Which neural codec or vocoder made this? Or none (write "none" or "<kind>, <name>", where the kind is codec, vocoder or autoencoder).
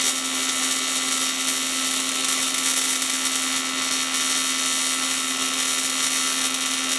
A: none